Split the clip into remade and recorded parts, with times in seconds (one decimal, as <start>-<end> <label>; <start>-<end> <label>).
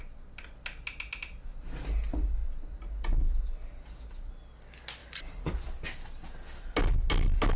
0.0-5.0 recorded; 5.0-5.5 remade; 5.5-7.6 recorded